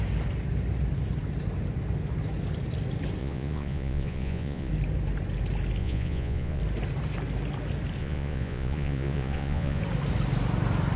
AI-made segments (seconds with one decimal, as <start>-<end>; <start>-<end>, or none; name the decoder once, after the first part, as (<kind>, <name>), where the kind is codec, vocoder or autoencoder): 3.2-4.7 (vocoder, Vocos); 5.8-6.6; 8.0-9.8